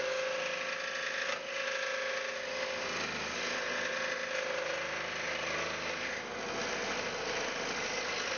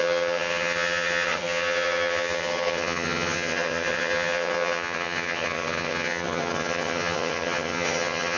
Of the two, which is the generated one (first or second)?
second